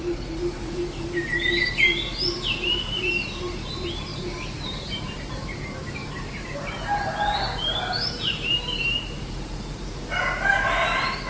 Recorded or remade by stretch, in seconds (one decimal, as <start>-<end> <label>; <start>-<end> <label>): 0.0-11.3 remade